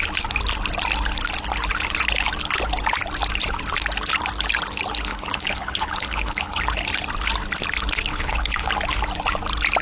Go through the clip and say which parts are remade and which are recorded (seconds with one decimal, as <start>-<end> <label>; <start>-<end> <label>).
0.0-5.1 recorded; 5.1-6.6 remade; 6.6-8.1 recorded; 8.1-8.7 remade; 8.7-9.8 recorded